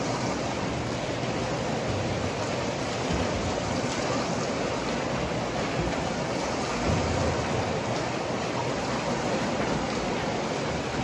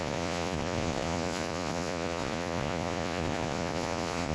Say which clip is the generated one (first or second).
second